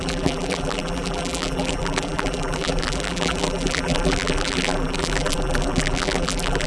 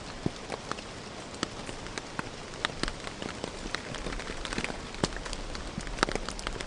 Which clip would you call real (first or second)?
second